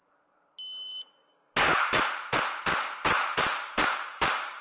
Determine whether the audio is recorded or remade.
recorded